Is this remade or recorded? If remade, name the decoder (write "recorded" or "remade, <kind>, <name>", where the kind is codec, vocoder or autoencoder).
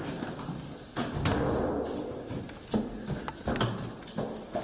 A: recorded